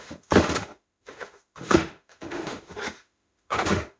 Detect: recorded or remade remade